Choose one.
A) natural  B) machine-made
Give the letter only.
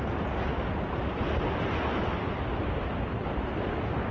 A